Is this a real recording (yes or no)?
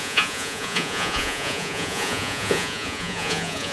no